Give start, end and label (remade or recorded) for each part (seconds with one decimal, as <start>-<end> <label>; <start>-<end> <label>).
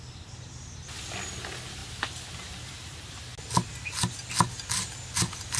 0.0-5.6 recorded